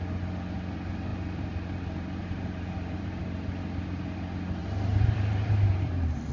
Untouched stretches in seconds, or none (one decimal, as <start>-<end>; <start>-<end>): 0.0-1.1; 3.2-4.6